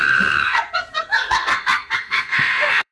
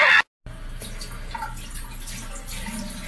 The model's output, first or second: first